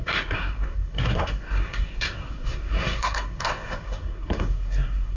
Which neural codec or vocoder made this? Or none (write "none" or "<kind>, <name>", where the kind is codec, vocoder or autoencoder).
codec, SNAC